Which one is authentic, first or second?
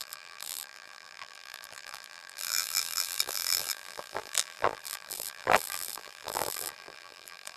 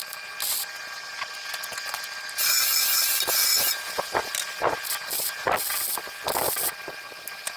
second